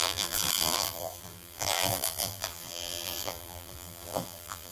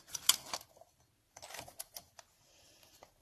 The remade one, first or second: first